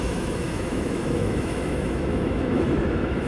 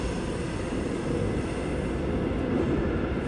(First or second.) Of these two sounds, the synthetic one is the first